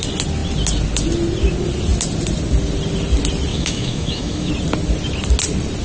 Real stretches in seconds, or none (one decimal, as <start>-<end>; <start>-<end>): 0.0-3.5; 4.5-5.8